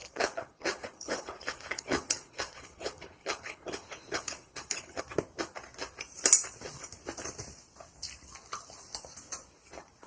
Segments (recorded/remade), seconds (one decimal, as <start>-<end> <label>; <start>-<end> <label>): 0.0-5.0 remade; 5.0-10.1 recorded